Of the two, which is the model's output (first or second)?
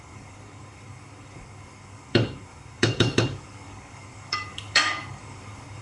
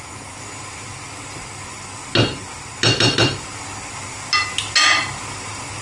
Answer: first